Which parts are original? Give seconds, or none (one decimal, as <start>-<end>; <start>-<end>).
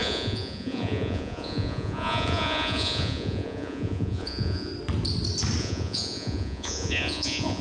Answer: 4.7-5.6